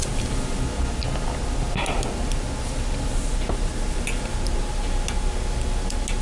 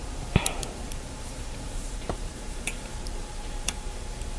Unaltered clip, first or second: first